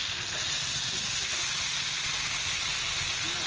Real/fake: real